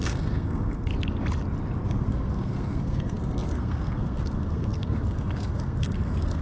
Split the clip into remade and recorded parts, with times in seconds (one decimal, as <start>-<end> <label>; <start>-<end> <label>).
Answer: 0.0-0.9 remade; 0.9-1.9 recorded; 1.9-6.4 remade